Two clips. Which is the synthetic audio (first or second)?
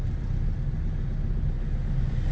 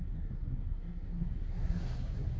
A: second